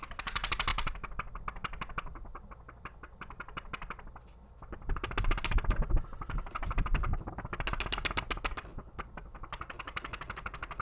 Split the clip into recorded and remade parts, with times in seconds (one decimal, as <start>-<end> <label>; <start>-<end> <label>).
0.0-0.7 recorded; 0.7-1.4 remade; 1.4-10.8 recorded